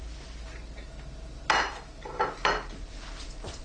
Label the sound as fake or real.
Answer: real